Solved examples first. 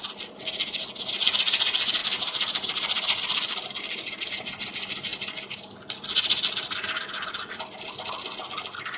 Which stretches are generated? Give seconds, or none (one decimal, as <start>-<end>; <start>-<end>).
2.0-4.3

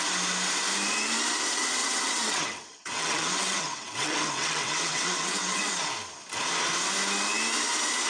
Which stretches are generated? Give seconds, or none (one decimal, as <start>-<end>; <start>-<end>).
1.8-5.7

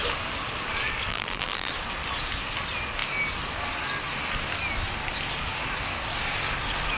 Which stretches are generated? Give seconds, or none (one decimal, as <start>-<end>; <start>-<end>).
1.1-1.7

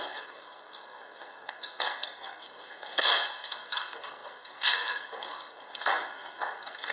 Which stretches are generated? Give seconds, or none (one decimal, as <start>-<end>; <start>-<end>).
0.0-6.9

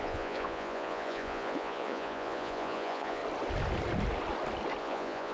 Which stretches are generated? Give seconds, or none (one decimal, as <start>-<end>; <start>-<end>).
0.0-3.2; 4.8-5.3